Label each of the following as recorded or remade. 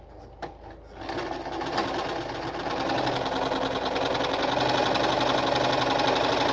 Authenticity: recorded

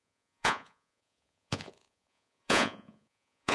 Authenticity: remade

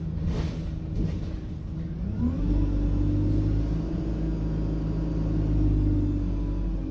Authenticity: recorded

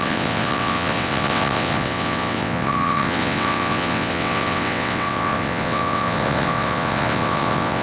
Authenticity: remade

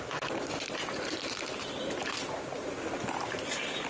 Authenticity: recorded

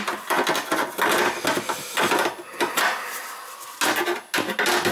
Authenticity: recorded